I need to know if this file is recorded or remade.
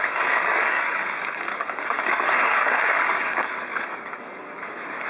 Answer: remade